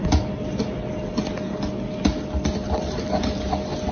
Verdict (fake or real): real